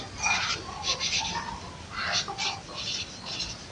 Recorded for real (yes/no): yes